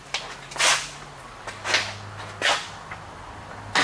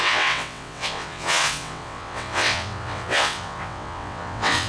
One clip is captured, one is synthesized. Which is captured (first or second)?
first